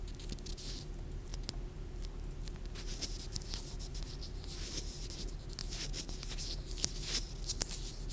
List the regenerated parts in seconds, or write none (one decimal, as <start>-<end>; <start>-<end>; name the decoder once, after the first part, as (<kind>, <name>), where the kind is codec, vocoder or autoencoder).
5.6-6.4 (vocoder, BigVGAN v2)